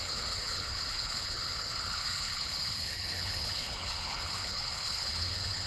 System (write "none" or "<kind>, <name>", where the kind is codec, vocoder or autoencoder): codec, HILCodec